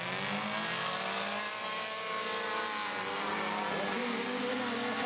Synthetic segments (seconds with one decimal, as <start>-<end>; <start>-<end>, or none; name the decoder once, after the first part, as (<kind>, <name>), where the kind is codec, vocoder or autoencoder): 4.0-4.5 (codec, DAC)